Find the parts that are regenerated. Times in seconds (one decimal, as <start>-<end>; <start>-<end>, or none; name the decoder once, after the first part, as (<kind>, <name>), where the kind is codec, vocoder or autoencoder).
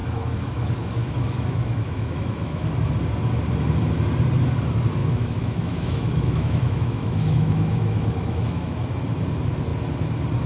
0.0-2.7 (autoencoder, DAC-VAE); 5.0-8.8